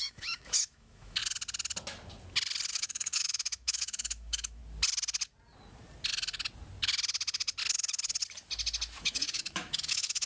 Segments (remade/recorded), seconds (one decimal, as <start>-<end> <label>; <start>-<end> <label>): 0.0-1.2 remade; 1.2-2.7 recorded; 2.7-4.6 remade; 4.6-9.0 recorded; 9.0-10.3 remade